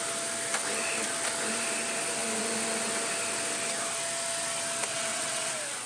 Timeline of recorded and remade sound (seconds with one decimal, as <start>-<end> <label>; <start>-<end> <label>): 0.0-4.9 recorded; 4.9-5.5 remade; 5.5-5.9 recorded